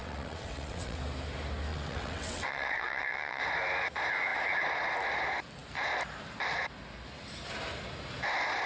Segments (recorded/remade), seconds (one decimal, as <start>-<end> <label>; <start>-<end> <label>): 0.0-1.0 remade; 1.0-1.7 recorded; 1.7-3.4 remade; 3.4-8.7 recorded